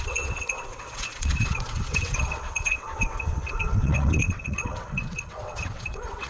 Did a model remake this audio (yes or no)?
yes